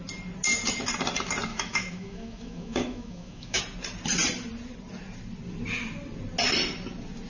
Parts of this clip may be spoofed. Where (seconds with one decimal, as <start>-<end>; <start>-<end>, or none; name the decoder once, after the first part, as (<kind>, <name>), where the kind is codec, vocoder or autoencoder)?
1.5-3.6 (autoencoder, DAC-VAE)